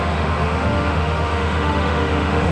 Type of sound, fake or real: fake